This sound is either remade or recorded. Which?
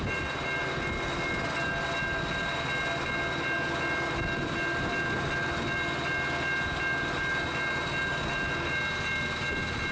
recorded